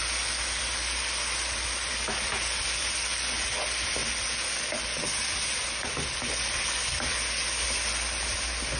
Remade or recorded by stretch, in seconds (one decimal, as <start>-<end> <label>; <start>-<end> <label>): 0.0-8.8 recorded

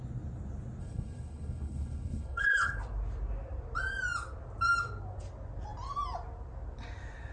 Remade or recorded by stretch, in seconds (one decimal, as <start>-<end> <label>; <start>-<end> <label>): 0.0-0.8 recorded; 0.8-2.8 remade; 2.8-7.3 recorded

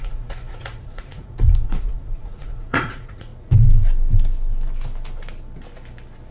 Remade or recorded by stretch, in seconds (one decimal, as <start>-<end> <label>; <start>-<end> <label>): 0.0-3.3 remade; 3.3-6.3 recorded